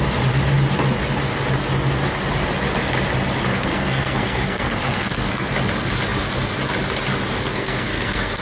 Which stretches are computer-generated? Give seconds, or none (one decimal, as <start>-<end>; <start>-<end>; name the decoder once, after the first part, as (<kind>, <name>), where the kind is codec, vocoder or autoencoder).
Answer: 3.5-5.5 (codec, SNAC); 7.4-8.4